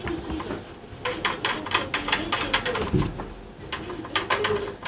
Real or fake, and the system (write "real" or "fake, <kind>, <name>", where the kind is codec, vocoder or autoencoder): real